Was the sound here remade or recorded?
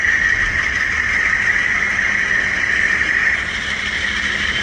remade